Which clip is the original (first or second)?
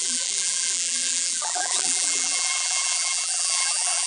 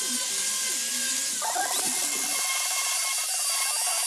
second